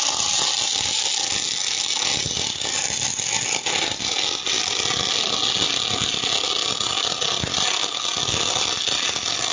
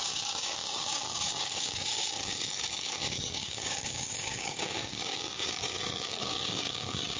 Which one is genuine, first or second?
first